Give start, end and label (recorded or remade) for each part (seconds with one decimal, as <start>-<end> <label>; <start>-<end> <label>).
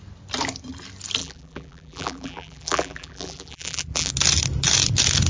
0.0-1.2 recorded; 1.2-4.1 remade; 4.1-5.3 recorded